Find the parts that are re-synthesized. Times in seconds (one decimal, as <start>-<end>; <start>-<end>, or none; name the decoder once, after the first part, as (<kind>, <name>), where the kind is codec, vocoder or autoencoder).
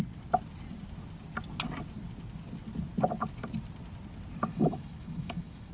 4.5-5.7 (autoencoder, DAC-VAE)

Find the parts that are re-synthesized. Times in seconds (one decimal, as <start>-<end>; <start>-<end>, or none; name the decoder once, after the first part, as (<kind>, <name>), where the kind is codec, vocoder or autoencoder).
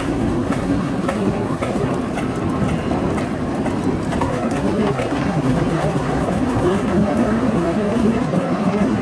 0.0-1.9 (codec, SNAC); 4.2-9.0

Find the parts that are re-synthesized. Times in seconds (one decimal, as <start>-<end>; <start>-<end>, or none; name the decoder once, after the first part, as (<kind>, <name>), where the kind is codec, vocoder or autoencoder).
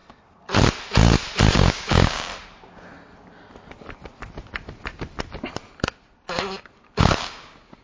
1.5-2.3 (codec, DAC); 7.0-7.8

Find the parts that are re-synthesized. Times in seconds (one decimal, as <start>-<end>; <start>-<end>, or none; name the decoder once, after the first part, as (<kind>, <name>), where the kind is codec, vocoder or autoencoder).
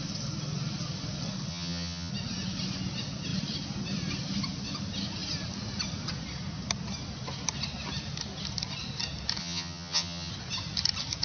1.5-2.1 (vocoder, HiFi-GAN); 9.4-10.3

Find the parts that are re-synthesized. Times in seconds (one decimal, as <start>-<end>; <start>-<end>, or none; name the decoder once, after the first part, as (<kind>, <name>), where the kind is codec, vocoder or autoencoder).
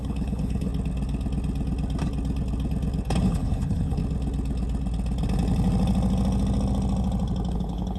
0.0-0.7 (codec, HILCodec); 3.2-4.0; 7.5-8.0